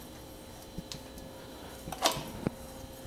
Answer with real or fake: real